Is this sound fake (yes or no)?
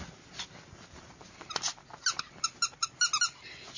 no